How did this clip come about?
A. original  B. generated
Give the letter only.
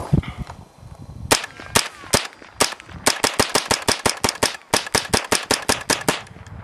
A